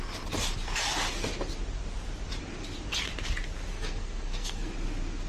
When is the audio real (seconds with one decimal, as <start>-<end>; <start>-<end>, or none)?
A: 0.0-3.7; 4.7-5.3